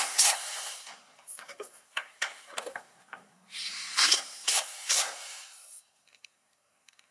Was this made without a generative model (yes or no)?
no